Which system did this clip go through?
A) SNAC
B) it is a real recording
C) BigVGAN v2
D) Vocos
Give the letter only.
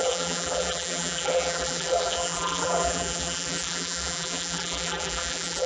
C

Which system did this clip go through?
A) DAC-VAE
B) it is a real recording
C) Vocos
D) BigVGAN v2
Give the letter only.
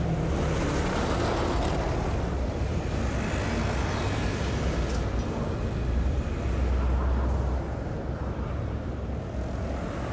B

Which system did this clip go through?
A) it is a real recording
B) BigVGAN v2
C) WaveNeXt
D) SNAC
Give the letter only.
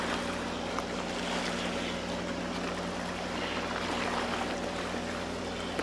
A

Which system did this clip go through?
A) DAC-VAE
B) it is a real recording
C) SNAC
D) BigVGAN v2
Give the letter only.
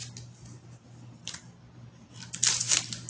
B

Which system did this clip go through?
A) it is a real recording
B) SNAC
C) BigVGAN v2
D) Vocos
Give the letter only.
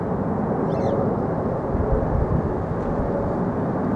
A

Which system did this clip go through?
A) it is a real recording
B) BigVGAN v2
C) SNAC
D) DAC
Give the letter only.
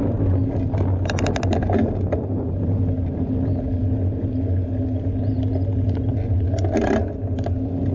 A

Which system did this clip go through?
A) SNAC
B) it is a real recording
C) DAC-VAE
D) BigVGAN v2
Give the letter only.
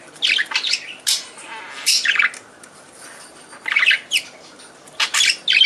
B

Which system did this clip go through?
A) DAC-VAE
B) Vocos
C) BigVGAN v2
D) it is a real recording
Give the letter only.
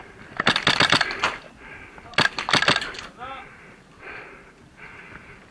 D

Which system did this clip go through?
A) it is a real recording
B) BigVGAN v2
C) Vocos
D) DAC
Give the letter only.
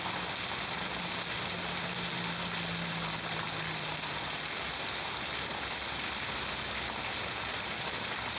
A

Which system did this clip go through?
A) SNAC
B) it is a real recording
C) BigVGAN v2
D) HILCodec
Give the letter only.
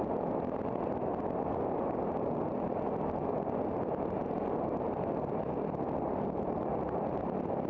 B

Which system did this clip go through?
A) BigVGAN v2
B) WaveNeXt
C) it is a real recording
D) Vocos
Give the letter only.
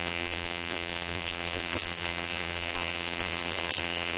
A